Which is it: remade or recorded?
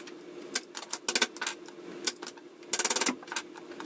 recorded